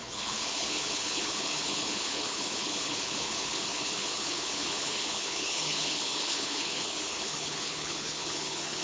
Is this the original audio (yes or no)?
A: no